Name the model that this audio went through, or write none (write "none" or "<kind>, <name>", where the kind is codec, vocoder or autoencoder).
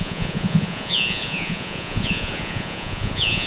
vocoder, Vocos